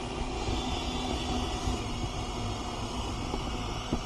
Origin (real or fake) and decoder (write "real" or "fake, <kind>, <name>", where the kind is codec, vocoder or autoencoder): real